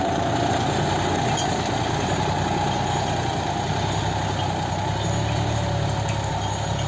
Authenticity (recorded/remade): recorded